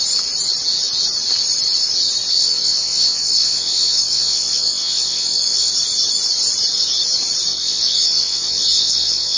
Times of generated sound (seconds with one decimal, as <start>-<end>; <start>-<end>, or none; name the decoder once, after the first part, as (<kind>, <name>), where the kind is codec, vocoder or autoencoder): 2.4-5.7 (vocoder, WaveNeXt); 7.5-9.4